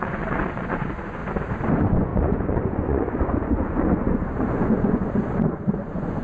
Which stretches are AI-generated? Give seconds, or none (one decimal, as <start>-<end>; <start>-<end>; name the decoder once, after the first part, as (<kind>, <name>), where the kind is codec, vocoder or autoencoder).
0.0-1.2 (vocoder, Vocos); 1.7-6.2